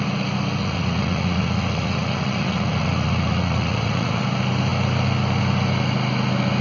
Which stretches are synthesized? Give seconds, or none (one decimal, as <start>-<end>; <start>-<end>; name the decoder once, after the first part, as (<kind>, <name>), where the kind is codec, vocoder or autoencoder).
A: 0.6-4.2 (vocoder, Vocos)